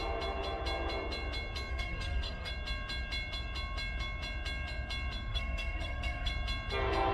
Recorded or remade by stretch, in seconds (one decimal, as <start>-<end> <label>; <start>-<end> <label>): 0.0-1.7 recorded; 1.7-2.5 remade; 2.5-5.3 recorded; 5.3-6.3 remade; 6.3-7.1 recorded